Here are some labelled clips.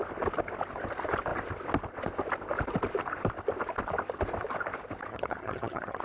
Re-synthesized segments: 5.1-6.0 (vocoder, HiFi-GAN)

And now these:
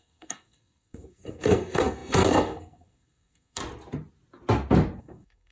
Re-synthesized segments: 0.0-3.6 (codec, SNAC); 5.0-5.5

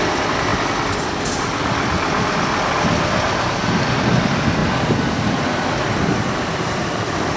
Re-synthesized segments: none

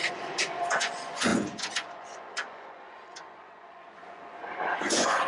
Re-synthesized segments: 0.0-5.3 (vocoder, Vocos)

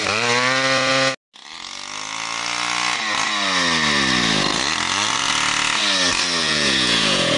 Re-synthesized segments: 6.4-7.4 (vocoder, Vocos)